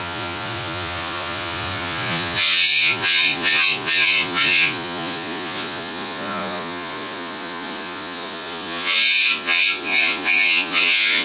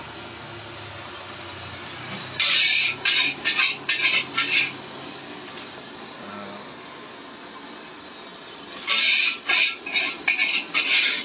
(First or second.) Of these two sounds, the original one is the second